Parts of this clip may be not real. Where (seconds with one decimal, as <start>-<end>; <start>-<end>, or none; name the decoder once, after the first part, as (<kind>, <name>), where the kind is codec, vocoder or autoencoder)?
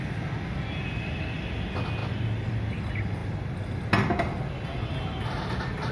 none